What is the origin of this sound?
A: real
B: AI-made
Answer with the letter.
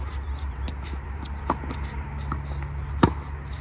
A